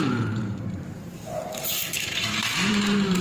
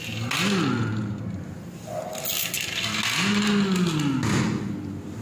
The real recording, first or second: second